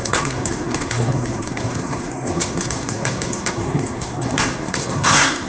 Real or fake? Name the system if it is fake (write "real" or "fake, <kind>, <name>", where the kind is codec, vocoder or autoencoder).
fake, codec, SNAC